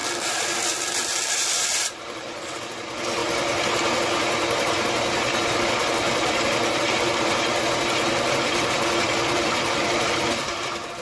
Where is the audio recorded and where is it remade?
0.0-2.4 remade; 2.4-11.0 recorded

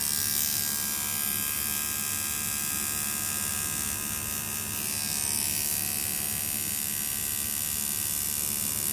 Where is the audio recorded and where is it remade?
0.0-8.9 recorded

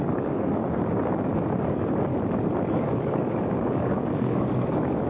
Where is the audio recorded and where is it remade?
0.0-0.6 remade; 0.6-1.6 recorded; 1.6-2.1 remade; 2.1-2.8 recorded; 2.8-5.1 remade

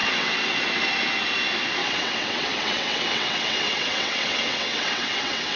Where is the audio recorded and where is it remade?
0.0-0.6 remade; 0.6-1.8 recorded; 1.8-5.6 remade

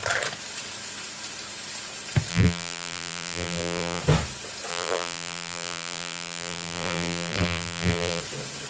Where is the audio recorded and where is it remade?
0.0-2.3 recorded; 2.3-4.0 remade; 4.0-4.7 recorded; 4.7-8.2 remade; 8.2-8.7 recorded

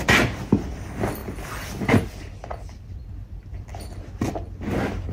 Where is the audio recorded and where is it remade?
0.0-5.1 recorded

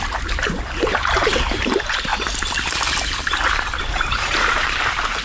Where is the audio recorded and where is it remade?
0.0-2.1 remade; 2.1-3.8 recorded; 3.8-5.2 remade

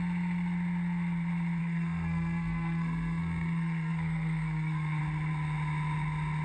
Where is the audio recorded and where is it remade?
0.0-1.6 recorded; 1.6-5.0 remade; 5.0-6.4 recorded